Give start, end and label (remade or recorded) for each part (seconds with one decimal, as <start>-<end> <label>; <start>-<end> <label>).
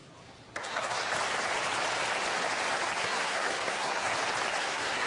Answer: 0.0-0.6 recorded; 0.6-1.0 remade; 1.0-3.0 recorded; 3.0-4.1 remade; 4.1-4.6 recorded; 4.6-5.1 remade